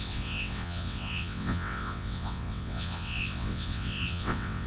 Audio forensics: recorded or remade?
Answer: remade